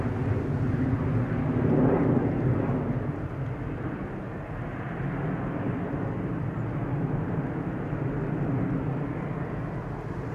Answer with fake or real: real